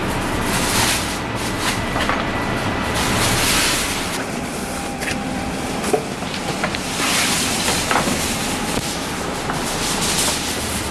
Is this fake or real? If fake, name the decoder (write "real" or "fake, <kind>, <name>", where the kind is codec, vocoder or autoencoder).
fake, vocoder, BigVGAN v2